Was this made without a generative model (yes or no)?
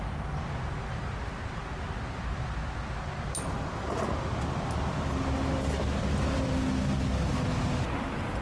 yes